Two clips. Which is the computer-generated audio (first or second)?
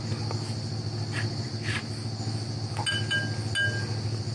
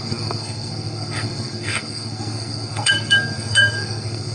second